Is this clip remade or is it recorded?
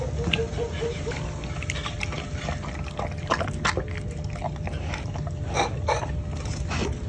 recorded